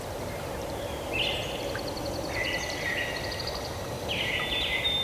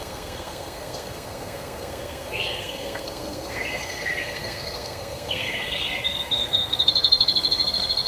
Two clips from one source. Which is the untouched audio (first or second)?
first